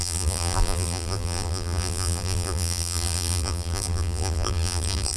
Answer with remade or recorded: remade